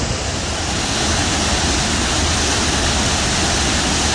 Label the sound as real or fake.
real